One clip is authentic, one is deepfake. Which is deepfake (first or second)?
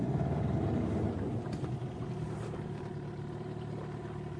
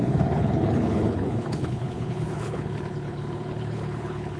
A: second